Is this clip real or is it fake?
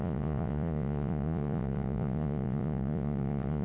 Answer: fake